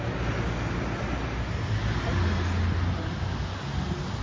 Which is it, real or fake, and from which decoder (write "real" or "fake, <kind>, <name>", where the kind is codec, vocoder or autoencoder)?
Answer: real